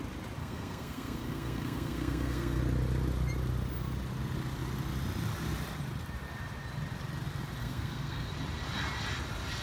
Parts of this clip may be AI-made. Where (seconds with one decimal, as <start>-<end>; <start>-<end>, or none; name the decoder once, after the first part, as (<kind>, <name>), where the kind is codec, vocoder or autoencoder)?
0.4-2.6 (codec, SNAC); 7.6-8.3